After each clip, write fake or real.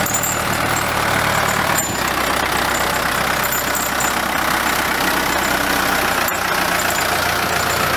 real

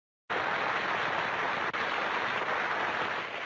real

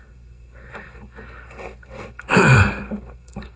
fake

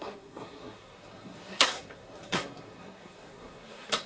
fake